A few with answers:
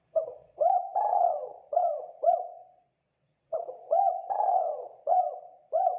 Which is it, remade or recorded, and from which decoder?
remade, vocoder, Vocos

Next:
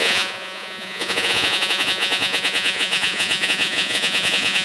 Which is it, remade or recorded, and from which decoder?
remade, vocoder, Vocos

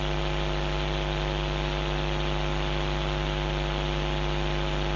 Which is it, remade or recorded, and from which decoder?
recorded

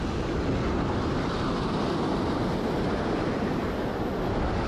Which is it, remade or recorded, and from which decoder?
recorded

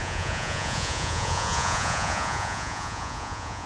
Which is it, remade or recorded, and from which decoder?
remade, vocoder, Vocos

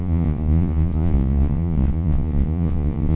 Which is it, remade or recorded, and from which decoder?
remade, vocoder, Vocos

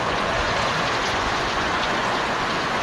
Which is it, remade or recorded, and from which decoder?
remade, vocoder, Vocos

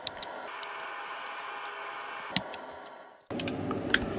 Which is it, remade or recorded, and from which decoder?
recorded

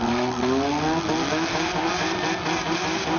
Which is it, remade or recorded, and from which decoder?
recorded